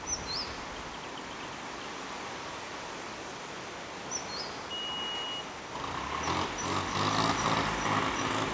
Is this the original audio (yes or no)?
yes